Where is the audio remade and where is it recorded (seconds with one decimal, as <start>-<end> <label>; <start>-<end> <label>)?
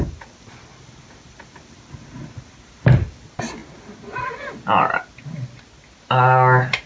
0.0-6.9 recorded